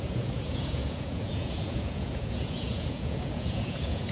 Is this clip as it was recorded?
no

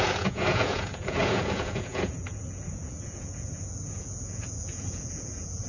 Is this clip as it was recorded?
no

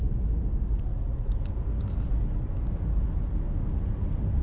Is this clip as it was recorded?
yes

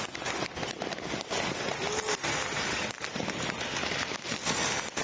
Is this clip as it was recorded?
yes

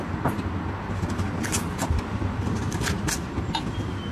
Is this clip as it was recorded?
yes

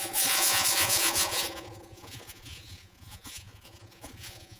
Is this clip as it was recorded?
no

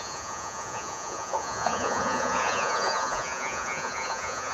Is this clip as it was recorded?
no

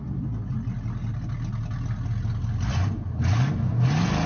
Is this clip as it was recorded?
yes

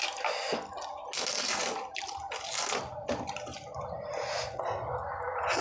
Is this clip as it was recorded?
yes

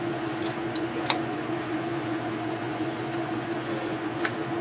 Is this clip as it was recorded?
no